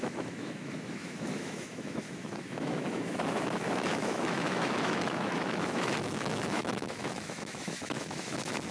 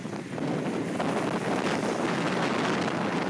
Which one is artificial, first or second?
first